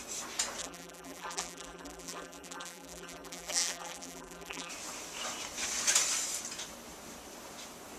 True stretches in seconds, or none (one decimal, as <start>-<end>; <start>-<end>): 0.0-0.6; 4.7-8.0